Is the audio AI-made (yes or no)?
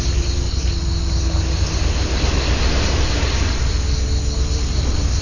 no